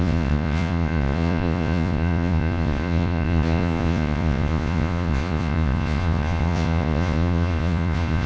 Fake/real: fake